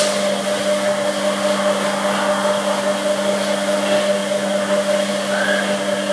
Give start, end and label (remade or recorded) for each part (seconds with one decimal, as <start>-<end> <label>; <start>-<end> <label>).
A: 0.0-6.1 recorded